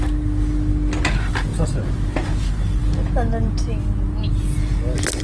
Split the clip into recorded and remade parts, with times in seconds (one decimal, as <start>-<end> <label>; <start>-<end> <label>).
0.0-5.2 recorded